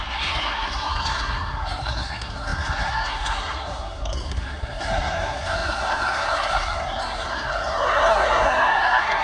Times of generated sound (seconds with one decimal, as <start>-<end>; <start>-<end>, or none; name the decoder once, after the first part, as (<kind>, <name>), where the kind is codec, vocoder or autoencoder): 0.0-9.2 (codec, SNAC)